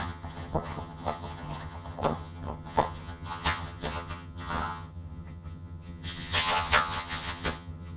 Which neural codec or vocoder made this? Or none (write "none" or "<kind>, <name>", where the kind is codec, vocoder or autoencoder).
vocoder, HiFi-GAN